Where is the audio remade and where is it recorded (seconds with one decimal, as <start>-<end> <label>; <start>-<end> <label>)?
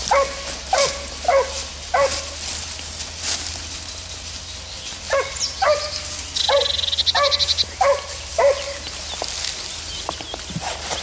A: 0.0-11.0 recorded